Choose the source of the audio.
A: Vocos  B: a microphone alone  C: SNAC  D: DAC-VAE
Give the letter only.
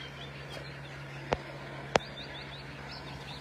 B